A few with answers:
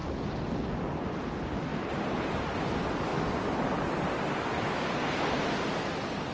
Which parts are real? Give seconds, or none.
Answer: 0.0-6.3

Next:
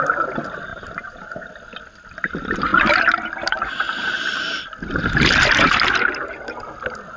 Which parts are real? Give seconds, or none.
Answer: 0.0-0.7; 1.5-7.2

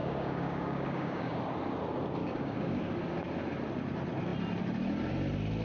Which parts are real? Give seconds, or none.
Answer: 1.4-2.2; 2.8-5.6

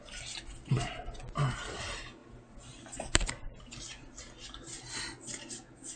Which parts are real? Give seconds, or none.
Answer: 0.0-6.0

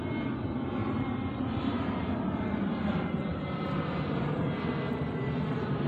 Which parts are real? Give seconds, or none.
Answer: 0.0-0.8; 3.4-5.9

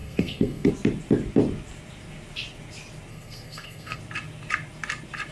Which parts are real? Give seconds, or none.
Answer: 0.7-3.1; 4.0-5.3